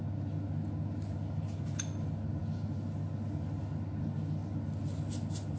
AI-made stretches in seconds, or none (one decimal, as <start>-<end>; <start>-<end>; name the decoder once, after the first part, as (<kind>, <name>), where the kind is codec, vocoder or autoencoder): none

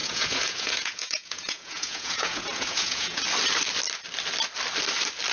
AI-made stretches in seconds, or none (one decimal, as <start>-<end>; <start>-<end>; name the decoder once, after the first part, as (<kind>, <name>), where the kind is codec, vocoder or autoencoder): 0.0-3.2 (vocoder, Vocos)

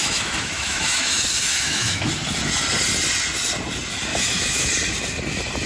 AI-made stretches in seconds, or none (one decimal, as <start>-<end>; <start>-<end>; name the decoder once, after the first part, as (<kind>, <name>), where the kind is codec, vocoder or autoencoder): 0.0-2.1 (autoencoder, DAC-VAE); 4.1-4.7

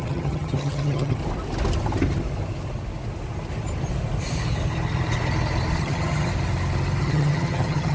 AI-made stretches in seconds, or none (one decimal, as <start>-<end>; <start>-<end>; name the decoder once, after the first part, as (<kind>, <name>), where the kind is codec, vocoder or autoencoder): 0.0-1.2 (vocoder, HiFi-GAN); 5.8-6.3; 7.0-7.9

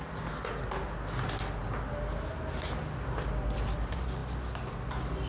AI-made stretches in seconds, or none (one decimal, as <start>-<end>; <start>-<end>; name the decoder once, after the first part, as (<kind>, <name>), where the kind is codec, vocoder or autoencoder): none

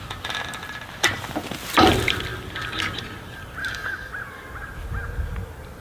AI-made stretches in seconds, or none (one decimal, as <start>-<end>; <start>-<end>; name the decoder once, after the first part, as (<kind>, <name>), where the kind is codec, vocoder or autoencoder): 3.6-4.1 (codec, DAC)

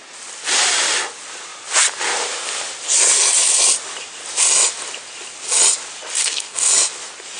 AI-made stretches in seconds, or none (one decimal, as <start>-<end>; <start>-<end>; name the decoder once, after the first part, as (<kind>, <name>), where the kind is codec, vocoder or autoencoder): 6.2-6.7 (codec, SNAC)

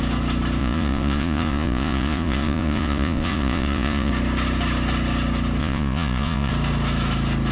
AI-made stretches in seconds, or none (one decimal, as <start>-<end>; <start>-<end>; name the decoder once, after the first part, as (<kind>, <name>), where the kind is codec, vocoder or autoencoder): 0.6-4.1 (vocoder, Vocos); 5.6-6.5